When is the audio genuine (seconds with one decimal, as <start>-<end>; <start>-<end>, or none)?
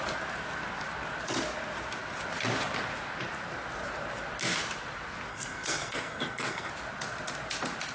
0.0-5.3; 6.7-7.9